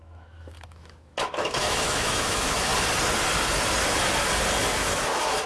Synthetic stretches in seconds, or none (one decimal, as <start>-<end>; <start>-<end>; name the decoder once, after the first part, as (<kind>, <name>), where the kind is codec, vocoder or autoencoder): 0.0-2.7 (autoencoder, DAC-VAE); 4.7-5.5